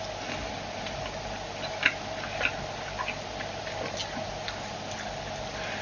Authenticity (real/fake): real